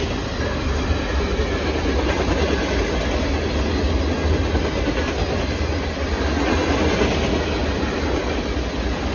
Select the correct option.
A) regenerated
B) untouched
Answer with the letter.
B